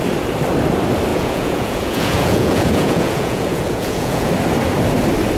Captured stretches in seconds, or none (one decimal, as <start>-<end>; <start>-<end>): 0.0-1.1; 4.3-5.4